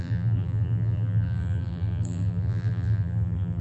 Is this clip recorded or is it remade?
remade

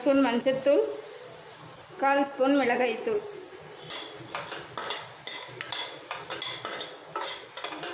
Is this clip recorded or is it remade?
recorded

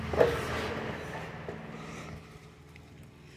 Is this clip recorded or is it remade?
recorded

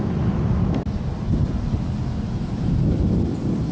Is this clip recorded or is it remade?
recorded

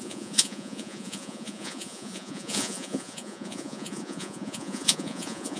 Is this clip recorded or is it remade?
remade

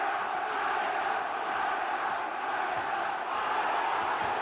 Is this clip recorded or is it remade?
remade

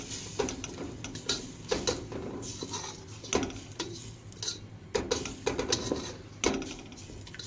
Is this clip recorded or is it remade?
recorded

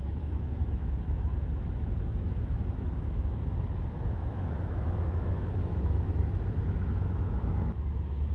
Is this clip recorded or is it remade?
remade